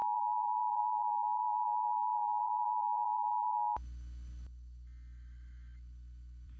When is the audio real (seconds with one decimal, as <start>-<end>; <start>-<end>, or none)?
none